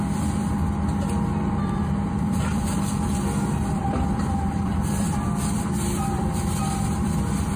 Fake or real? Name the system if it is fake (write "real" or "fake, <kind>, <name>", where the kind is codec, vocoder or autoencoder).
fake, vocoder, BigVGAN v2